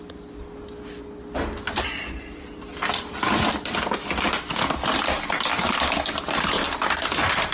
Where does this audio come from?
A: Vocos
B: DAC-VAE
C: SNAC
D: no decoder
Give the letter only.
D